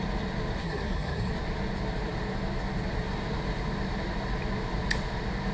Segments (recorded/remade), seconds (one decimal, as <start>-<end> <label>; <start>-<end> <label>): 0.0-0.6 recorded; 0.6-1.3 remade; 1.3-5.5 recorded